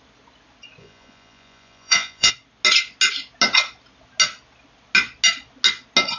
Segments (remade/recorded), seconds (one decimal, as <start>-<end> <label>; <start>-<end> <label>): 0.0-0.8 recorded; 0.8-2.3 remade; 2.3-6.2 recorded